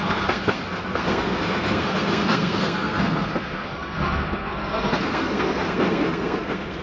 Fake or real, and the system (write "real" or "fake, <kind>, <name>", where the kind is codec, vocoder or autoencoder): fake, codec, SNAC